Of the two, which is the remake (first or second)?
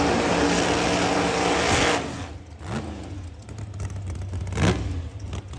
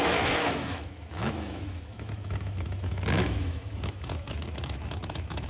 second